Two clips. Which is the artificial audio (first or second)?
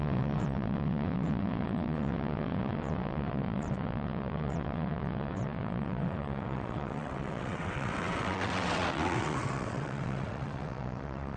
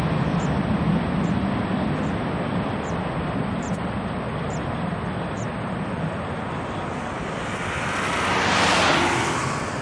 first